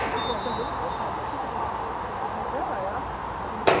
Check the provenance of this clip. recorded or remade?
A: recorded